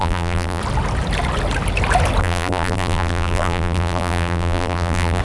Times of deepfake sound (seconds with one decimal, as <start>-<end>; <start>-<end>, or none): 0.0-0.6; 2.2-5.2

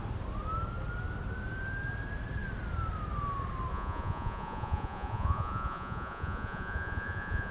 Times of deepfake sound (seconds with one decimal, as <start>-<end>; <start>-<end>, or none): 3.7-7.5

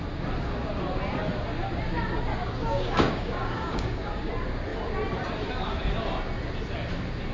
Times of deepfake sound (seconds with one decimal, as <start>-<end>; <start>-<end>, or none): 2.3-4.3

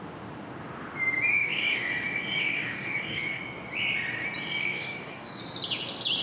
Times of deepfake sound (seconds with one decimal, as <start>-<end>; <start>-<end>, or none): 1.3-1.9; 2.4-3.4; 4.6-5.4

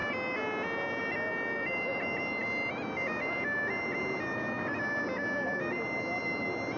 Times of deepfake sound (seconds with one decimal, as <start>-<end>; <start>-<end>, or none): none

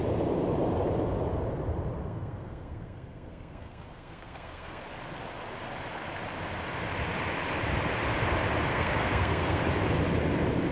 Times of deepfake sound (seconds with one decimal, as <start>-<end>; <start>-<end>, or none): 2.0-4.8; 8.7-9.6

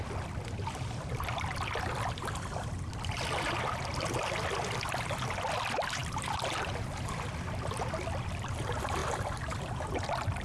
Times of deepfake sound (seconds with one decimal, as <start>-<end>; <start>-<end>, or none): none

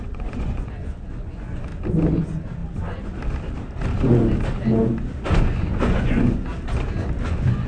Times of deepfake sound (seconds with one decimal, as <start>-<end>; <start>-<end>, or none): 0.0-1.7; 2.2-2.6; 5.4-6.5; 7.3-7.7